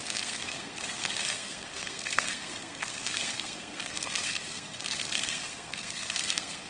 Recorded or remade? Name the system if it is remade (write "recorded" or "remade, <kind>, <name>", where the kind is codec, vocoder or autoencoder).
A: remade, codec, SNAC